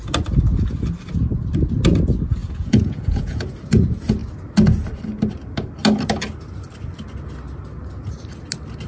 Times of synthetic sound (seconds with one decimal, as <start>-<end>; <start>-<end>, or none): 2.4-3.4